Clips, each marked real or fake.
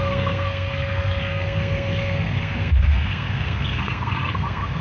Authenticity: fake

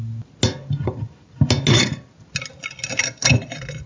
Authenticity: real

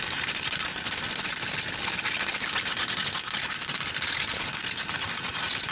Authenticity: real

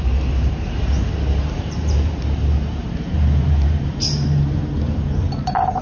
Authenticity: fake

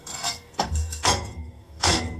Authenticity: fake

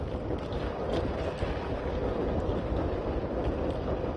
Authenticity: real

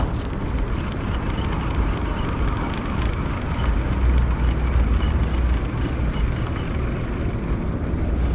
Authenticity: real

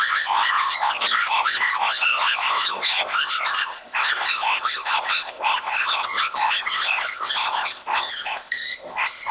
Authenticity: fake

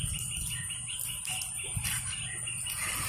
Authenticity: real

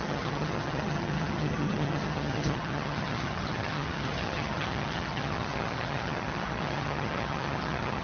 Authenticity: fake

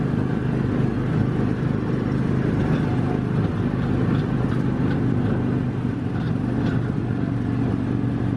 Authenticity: real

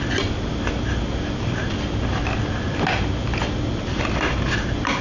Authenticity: real